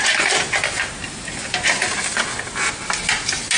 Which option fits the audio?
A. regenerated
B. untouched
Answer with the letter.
B